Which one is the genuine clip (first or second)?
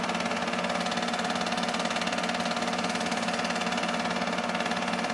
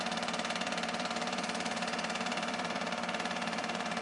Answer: first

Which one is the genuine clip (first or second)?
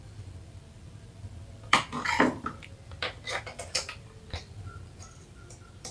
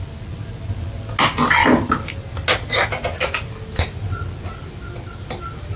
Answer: second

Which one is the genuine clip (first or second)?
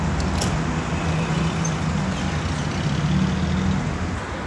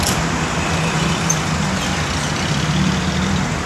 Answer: first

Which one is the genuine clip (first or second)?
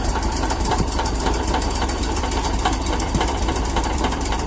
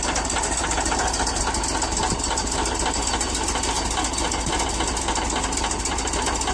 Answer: second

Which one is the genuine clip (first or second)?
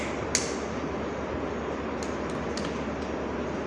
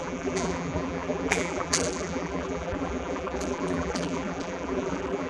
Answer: first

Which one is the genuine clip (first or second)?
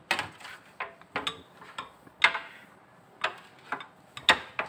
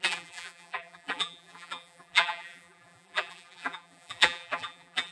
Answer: first